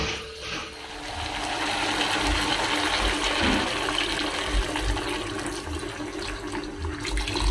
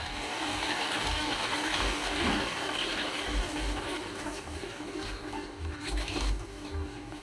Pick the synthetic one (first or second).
second